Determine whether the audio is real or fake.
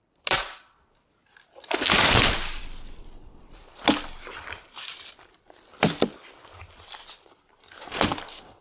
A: fake